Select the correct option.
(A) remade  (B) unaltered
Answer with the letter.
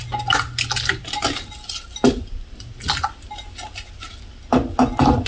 B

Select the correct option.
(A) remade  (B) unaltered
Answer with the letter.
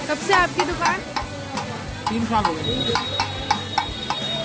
B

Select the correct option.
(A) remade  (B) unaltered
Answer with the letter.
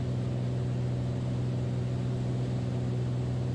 B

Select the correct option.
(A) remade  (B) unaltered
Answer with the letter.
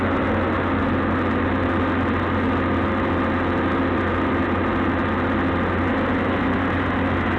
B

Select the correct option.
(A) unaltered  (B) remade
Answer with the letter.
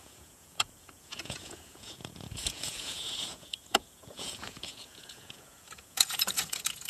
B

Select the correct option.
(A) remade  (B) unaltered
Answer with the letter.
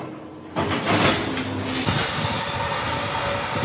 B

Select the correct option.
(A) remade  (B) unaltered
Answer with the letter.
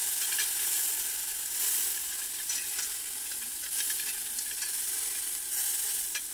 B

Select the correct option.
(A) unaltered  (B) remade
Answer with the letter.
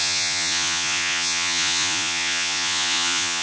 B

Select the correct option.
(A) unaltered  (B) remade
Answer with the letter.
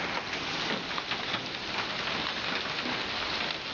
A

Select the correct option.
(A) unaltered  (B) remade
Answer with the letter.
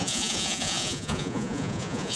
B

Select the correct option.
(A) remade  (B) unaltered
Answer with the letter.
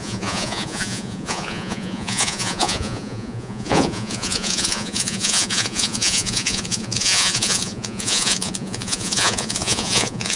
A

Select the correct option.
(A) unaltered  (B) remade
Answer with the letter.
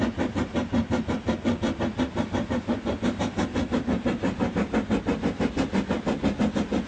A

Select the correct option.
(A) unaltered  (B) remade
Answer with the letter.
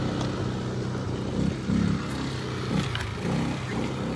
A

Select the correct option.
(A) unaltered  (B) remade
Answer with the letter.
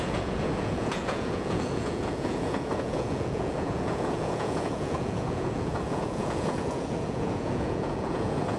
B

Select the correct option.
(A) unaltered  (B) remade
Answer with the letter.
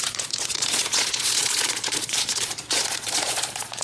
B